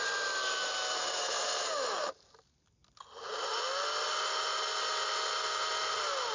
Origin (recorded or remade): recorded